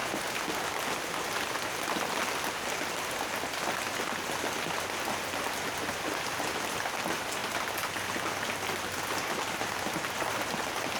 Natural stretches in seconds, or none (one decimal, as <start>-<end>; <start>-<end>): 0.0-11.0

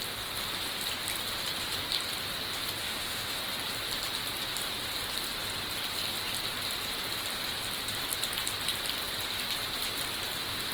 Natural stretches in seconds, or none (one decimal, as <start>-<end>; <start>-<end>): 0.0-2.8; 3.4-10.7